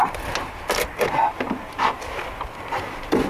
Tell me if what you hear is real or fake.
real